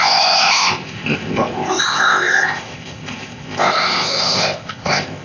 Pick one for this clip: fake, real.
fake